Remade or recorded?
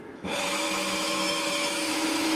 remade